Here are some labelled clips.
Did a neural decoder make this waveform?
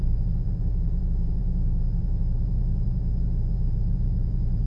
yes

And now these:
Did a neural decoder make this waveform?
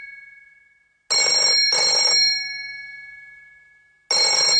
no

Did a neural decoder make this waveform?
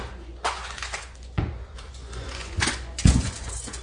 yes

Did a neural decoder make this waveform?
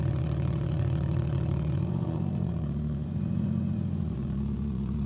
yes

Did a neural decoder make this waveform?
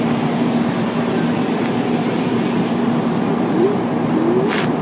no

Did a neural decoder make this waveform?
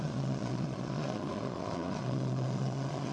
yes